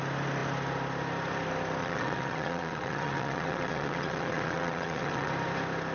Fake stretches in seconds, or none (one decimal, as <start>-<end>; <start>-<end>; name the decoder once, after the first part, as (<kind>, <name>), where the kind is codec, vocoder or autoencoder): 1.8-5.3 (vocoder, WaveNeXt)